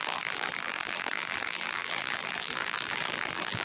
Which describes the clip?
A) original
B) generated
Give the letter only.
B